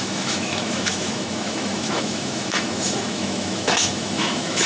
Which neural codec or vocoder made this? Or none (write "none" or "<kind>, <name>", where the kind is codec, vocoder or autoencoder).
autoencoder, DAC-VAE